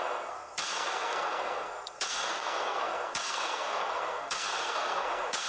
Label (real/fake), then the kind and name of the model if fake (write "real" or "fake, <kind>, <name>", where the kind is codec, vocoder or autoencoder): fake, codec, SNAC